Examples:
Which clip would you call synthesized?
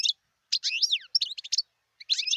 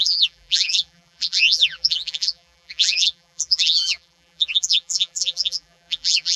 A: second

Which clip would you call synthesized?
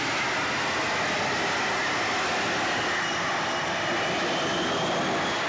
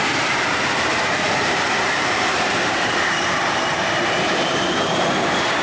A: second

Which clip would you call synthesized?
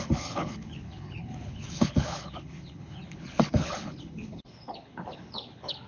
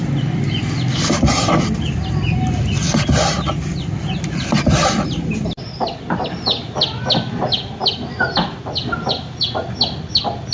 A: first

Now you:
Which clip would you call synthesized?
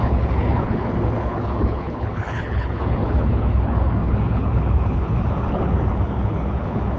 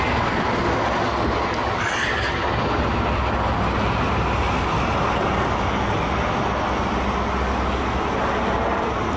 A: first